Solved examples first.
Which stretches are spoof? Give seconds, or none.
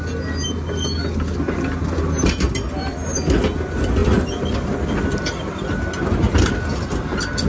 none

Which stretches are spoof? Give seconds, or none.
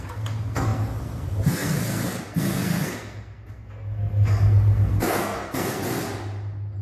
0.0-5.8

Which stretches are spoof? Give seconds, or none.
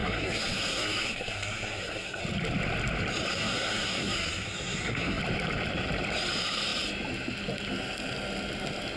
0.0-2.2; 3.3-5.2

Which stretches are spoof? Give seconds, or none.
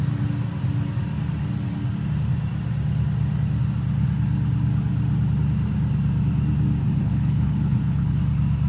7.0-8.2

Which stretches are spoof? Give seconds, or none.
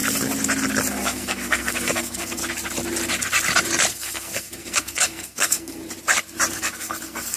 0.9-2.4; 3.9-5.8; 6.5-7.4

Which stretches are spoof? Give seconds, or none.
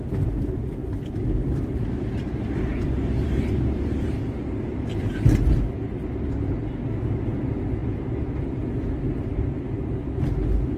0.8-5.4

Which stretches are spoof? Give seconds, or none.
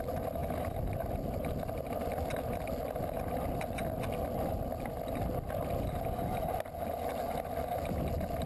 none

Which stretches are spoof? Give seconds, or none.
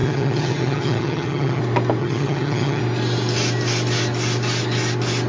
0.0-1.6; 2.0-2.8